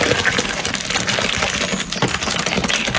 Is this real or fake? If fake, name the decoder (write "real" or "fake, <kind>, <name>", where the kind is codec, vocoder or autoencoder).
real